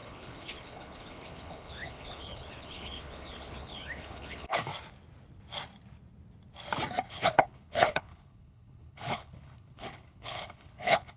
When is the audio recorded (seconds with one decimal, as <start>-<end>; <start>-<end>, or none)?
4.7-7.1